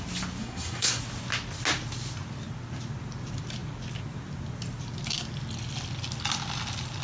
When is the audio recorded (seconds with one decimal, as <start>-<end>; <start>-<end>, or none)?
0.0-0.4; 1.0-7.0